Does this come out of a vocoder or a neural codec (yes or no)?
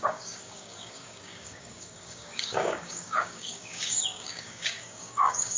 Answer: yes